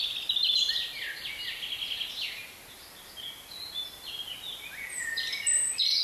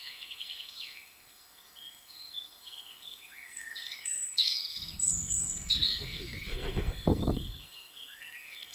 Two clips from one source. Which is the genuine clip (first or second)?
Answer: first